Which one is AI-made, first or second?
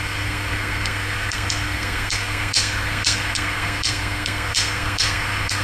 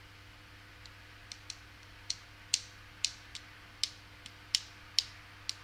first